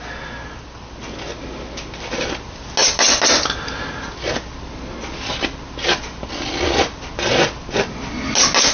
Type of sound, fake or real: real